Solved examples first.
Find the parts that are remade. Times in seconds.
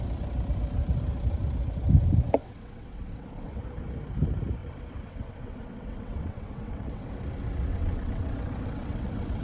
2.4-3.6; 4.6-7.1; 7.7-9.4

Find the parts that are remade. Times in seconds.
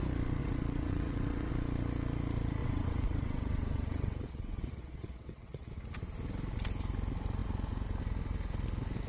0.4-1.5; 2.6-5.7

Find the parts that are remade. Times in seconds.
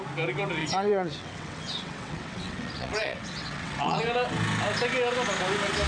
0.6-4.0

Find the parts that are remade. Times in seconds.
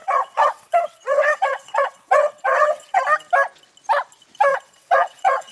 0.0-3.0; 4.5-5.5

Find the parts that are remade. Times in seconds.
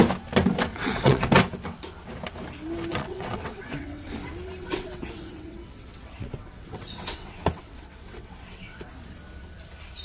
0.7-1.3; 2.9-4.1; 4.6-8.9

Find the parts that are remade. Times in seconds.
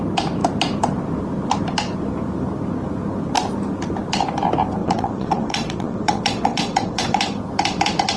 4.8-7.2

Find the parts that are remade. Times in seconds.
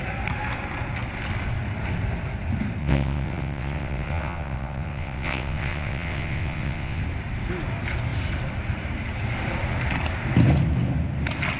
2.8-7.0